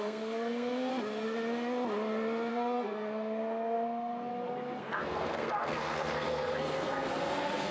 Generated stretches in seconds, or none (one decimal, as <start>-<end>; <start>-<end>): 0.0-0.9; 2.5-4.3; 4.8-7.7